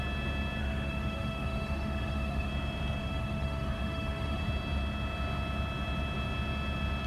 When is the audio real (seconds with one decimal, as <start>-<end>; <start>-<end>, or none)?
0.0-0.6; 2.5-3.0; 4.4-7.1